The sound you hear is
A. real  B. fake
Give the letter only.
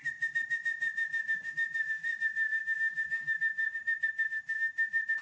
A